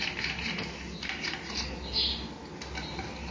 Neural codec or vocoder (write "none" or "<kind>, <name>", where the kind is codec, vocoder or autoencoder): none